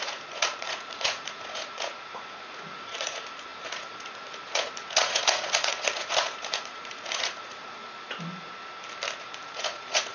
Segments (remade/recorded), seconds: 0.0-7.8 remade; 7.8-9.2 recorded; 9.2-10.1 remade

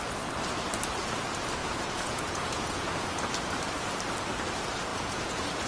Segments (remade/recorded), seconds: 0.0-1.6 recorded; 1.6-3.3 remade; 3.3-4.9 recorded; 4.9-5.7 remade

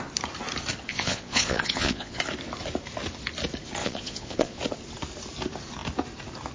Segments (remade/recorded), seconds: 0.0-0.9 recorded; 0.9-2.2 remade; 2.2-3.8 recorded; 3.8-4.6 remade; 4.6-6.5 recorded

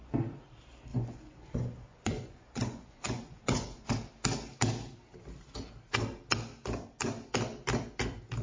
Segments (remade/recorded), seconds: 0.0-0.9 recorded; 0.9-3.9 remade; 3.9-8.4 recorded

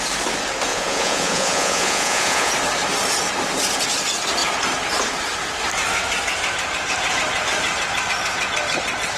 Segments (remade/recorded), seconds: 0.0-0.7 recorded; 0.7-2.5 remade; 2.5-9.2 recorded

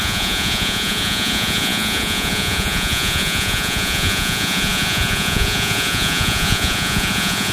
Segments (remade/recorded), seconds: 0.0-7.5 remade